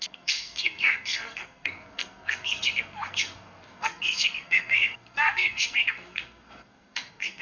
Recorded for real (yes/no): no